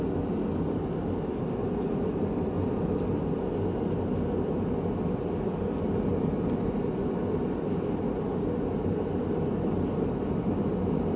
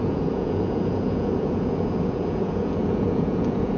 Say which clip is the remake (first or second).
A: second